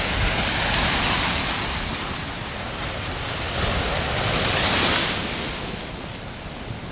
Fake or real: real